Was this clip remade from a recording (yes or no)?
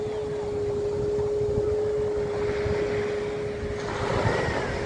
no